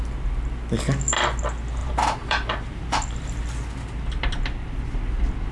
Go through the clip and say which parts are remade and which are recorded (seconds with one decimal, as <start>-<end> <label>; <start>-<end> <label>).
0.0-1.8 recorded; 1.8-2.8 remade; 2.8-5.5 recorded